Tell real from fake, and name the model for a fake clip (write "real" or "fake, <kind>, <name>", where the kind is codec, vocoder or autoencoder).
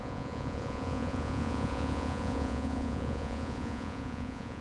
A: fake, vocoder, Vocos